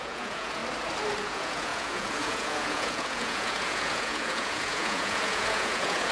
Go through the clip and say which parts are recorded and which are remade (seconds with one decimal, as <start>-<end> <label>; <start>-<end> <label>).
0.0-0.6 remade; 0.6-1.2 recorded; 1.2-6.1 remade